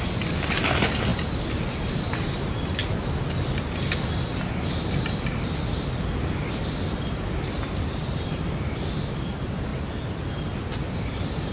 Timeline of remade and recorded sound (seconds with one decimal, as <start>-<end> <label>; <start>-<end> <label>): 0.0-9.7 recorded; 9.7-11.5 remade